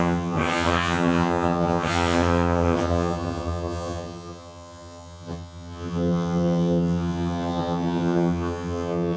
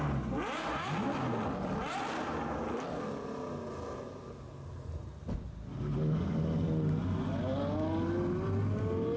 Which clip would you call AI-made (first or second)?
first